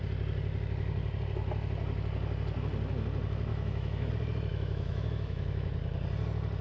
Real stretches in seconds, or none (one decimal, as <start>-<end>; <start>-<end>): 0.0-3.5; 4.1-4.5; 5.7-6.6